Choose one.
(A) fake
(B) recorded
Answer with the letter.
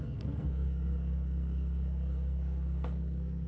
A